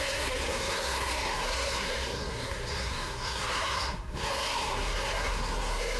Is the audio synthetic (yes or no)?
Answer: yes